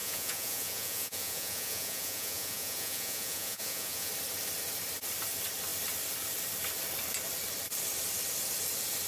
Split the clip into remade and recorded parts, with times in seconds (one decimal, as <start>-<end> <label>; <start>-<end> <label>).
0.0-4.1 remade; 4.1-9.1 recorded